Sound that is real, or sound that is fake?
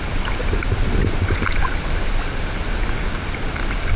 real